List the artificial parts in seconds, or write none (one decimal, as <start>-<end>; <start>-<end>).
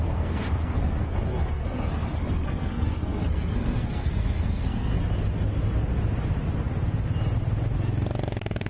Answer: 0.0-5.0